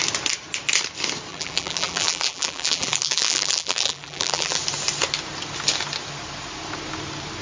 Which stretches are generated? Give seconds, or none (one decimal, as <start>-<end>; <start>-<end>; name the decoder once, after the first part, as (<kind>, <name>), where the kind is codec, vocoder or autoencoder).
1.3-4.6 (vocoder, BigVGAN v2)